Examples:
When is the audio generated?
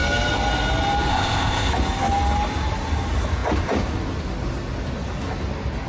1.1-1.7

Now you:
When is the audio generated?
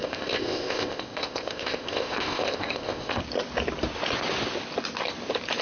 0.0-3.2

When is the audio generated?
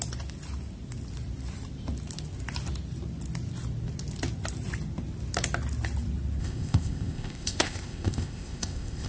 6.4-9.1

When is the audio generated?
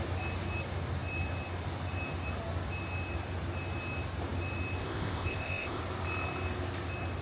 4.8-5.8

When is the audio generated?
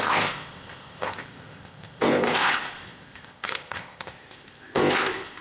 0.0-5.4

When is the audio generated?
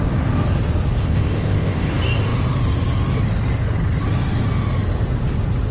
1.0-1.9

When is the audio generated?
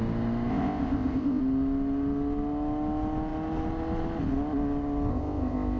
0.5-1.4; 5.1-5.8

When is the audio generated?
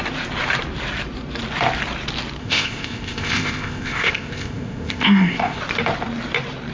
2.4-5.6